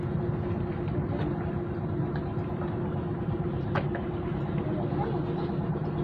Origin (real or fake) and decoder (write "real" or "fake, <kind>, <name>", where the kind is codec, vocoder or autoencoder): real